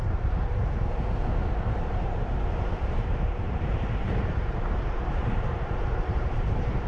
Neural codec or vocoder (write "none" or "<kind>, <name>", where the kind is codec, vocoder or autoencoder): vocoder, BigVGAN v2